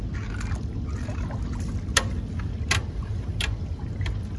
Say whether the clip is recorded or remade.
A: recorded